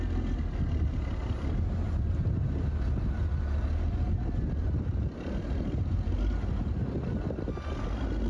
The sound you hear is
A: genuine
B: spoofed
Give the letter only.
A